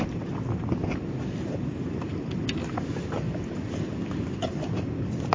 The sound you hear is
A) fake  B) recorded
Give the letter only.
A